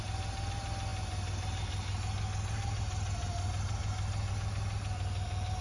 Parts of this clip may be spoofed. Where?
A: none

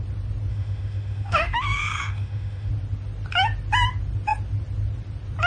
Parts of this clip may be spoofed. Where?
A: 0.5-2.7 (autoencoder, DAC-VAE)